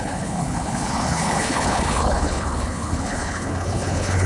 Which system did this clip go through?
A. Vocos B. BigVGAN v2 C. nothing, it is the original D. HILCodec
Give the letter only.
D